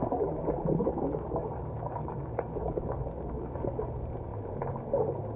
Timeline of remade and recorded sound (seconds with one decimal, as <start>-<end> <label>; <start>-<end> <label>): 0.0-0.8 recorded; 0.8-3.8 remade; 3.8-5.4 recorded